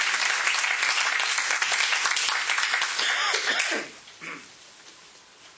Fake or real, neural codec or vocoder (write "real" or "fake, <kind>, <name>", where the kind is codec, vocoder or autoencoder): real